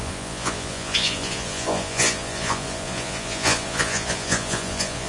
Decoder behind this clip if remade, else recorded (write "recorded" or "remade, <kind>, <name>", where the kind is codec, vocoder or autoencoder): remade, vocoder, Vocos